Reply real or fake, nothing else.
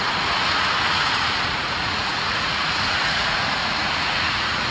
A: fake